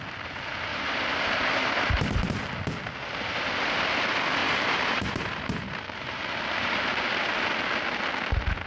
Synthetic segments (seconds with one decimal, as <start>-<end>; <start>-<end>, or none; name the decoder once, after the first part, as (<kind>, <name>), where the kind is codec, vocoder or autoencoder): 0.7-2.2 (vocoder, BigVGAN v2); 4.4-6.4